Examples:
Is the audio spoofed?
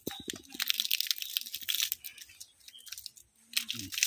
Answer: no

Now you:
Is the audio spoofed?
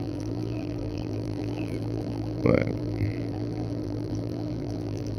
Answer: yes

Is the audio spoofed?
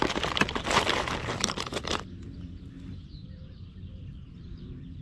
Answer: yes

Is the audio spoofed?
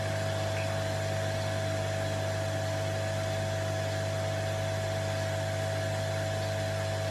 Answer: no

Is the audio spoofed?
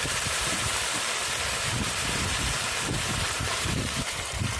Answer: yes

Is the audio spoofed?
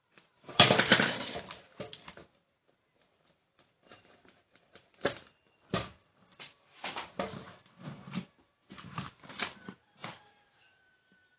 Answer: yes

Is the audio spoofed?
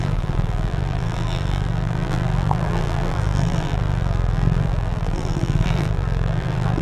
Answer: yes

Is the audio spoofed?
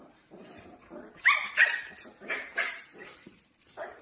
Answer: yes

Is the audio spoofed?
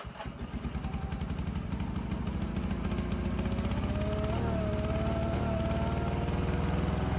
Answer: no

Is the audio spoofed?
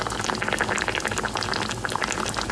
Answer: no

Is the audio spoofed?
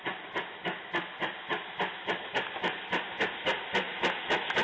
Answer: no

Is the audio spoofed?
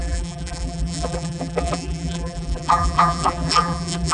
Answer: yes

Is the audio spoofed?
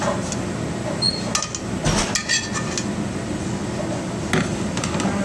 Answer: no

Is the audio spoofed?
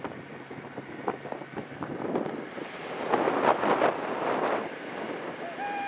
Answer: yes